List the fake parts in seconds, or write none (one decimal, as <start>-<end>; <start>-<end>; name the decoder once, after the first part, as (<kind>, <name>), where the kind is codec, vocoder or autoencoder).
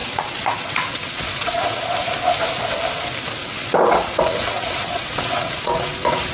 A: 0.0-1.8 (vocoder, WaveNeXt); 3.4-6.3